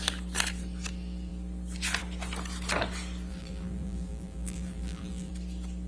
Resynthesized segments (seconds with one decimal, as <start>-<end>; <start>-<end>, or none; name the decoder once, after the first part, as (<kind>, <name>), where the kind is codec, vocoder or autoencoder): 3.3-5.3 (vocoder, BigVGAN v2)